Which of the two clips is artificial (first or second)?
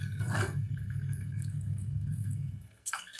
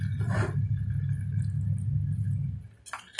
first